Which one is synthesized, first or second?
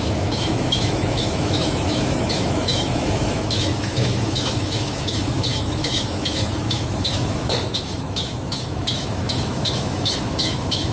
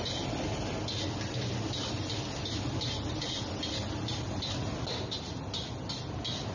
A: first